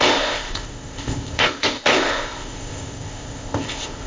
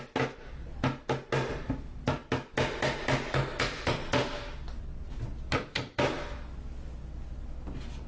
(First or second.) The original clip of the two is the second